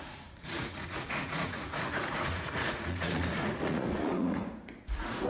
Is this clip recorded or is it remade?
remade